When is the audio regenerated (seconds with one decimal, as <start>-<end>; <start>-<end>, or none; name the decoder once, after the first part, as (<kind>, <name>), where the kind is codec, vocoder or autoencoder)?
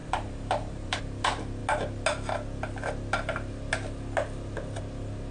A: 0.0-1.0 (vocoder, BigVGAN v2)